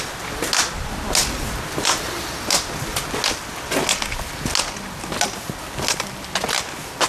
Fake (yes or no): no